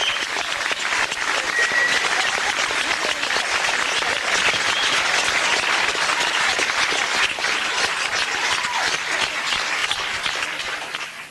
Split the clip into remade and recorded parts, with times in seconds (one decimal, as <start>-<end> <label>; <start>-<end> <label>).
0.0-9.8 recorded; 9.8-10.6 remade; 10.6-11.3 recorded